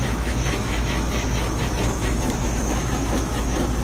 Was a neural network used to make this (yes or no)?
yes